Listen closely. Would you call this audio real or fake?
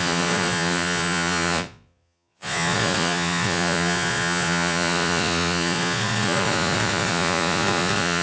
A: fake